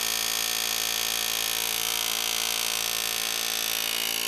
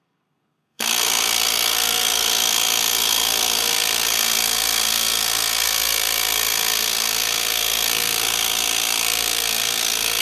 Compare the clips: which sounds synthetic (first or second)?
second